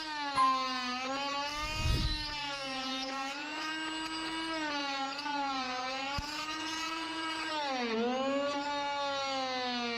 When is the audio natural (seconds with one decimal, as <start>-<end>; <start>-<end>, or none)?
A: 0.0-2.4; 3.7-4.8; 7.5-10.0